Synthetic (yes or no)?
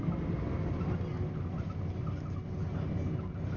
no